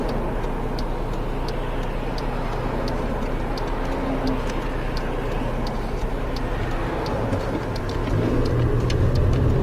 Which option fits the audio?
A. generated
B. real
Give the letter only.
B